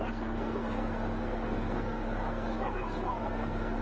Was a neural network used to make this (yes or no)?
yes